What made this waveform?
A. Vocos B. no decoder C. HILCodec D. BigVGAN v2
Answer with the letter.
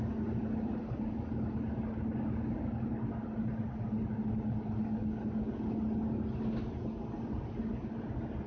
B